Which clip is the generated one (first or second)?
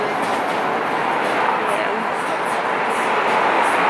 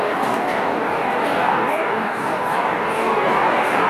second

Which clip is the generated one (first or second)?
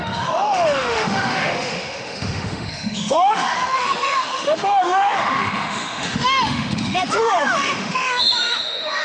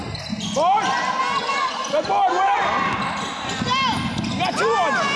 first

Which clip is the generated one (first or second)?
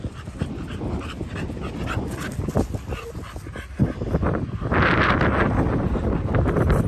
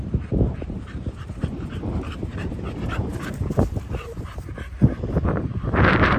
second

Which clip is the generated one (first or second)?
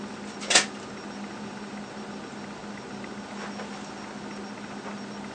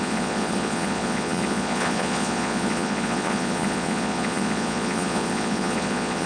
second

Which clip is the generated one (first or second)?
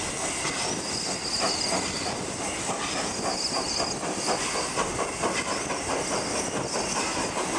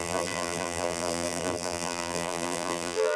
second